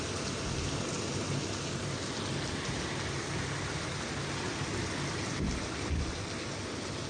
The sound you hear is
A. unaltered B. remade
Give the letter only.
A